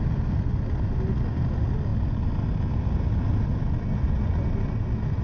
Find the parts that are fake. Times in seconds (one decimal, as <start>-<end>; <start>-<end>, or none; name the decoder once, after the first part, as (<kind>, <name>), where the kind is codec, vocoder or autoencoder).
none